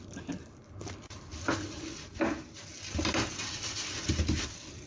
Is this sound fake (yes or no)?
no